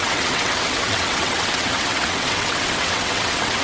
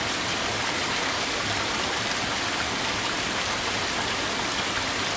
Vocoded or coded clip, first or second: first